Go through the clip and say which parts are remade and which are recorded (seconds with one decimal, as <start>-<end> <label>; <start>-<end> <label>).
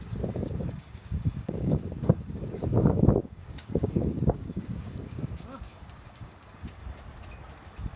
0.0-6.8 remade; 6.8-8.0 recorded